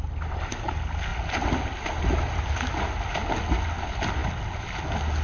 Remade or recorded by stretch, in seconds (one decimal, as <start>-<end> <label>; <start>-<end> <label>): 0.0-5.2 recorded